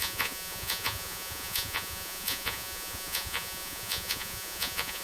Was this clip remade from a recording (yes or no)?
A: yes